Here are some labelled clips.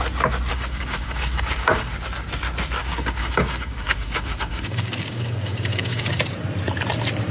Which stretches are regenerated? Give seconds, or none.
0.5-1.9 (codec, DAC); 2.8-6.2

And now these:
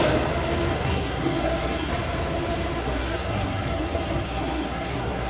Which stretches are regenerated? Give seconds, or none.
0.7-1.9 (codec, SNAC); 2.8-5.3

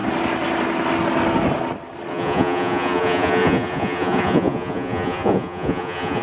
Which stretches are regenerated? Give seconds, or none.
2.1-6.2 (vocoder, Vocos)

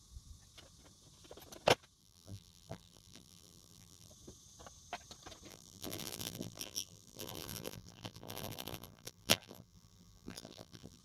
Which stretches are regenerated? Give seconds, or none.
2.0-4.1 (vocoder, BigVGAN v2); 5.5-11.0